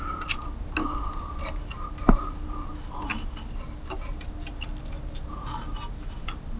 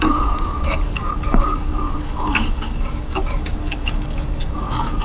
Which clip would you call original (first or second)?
first